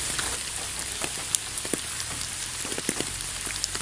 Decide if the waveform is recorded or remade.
recorded